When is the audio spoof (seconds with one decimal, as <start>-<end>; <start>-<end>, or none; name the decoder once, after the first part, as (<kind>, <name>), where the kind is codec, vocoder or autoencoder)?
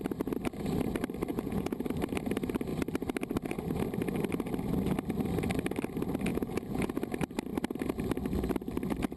1.3-1.8 (vocoder, Vocos); 6.3-6.9